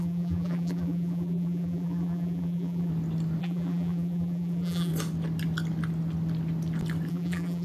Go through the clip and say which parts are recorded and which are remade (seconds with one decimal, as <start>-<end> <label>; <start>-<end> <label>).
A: 0.0-2.9 remade; 2.9-3.4 recorded; 3.4-4.9 remade; 4.9-7.1 recorded; 7.1-7.6 remade